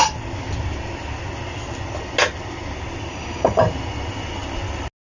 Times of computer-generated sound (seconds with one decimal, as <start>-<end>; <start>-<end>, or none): 3.1-3.6